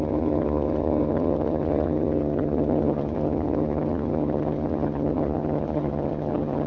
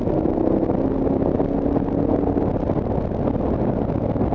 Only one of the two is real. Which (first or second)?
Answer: second